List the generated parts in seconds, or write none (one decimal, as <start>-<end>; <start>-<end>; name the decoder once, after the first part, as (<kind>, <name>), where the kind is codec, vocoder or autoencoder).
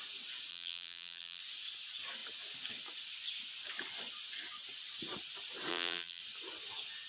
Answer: 0.5-1.4 (vocoder, BigVGAN v2); 5.7-6.2